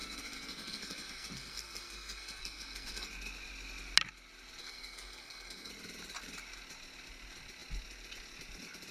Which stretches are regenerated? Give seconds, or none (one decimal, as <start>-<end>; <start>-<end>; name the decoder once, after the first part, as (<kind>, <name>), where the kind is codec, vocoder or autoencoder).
0.0-3.1 (codec, SNAC); 4.6-5.7